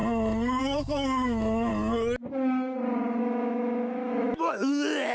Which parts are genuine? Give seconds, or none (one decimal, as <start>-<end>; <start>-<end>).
0.0-0.6; 1.7-3.2